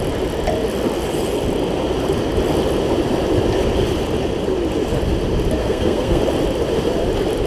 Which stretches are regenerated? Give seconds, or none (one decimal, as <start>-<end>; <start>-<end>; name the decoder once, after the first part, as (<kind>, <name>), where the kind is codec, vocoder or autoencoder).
5.6-6.2 (codec, SNAC)